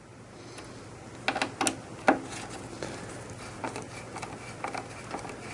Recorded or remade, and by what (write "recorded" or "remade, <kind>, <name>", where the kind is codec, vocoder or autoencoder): recorded